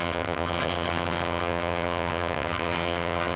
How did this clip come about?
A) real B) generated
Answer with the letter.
B